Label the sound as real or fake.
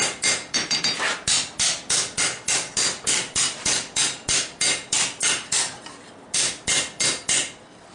real